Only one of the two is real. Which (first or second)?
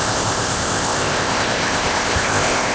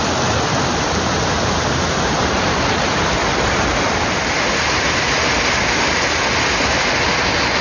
second